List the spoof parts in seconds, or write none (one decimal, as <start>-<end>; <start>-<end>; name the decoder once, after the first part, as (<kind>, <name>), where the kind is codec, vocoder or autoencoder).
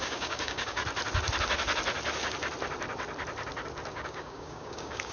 0.0-0.8 (codec, DAC); 3.9-5.1